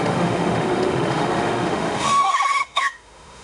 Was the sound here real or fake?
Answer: fake